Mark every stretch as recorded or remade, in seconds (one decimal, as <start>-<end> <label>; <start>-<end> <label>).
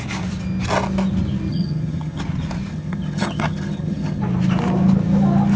0.0-1.5 recorded; 1.5-2.2 remade; 2.2-2.7 recorded; 2.7-4.2 remade; 4.2-5.6 recorded